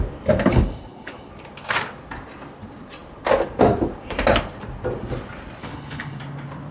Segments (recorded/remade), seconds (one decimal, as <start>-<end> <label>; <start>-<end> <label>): 0.0-0.5 recorded; 0.5-1.3 remade; 1.3-5.6 recorded; 5.6-6.2 remade; 6.2-6.7 recorded